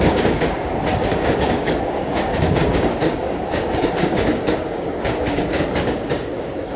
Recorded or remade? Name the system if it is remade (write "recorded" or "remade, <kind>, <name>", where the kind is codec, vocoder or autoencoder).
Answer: remade, codec, DAC